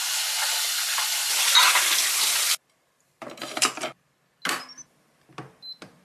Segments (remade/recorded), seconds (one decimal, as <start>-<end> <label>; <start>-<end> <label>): 0.0-6.0 recorded